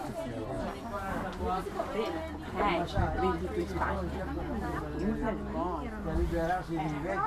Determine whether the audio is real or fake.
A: real